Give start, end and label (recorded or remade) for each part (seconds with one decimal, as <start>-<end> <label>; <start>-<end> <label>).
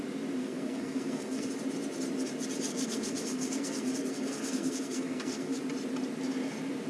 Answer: 0.0-0.4 recorded; 0.4-1.5 remade; 1.5-2.7 recorded; 2.7-5.6 remade; 5.6-6.9 recorded